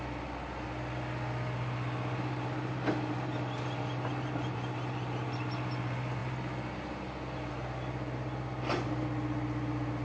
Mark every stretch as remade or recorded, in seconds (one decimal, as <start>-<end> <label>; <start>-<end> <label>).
0.0-10.0 recorded